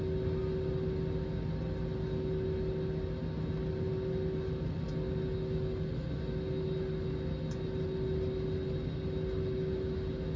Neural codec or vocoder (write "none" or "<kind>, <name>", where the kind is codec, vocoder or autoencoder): none